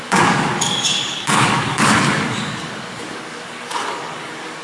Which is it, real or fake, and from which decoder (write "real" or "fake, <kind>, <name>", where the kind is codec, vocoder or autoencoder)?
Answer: fake, codec, DAC